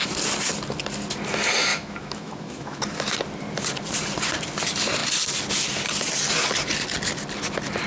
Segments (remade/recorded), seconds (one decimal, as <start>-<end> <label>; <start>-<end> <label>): 0.0-1.7 recorded; 1.7-2.8 remade; 2.8-7.9 recorded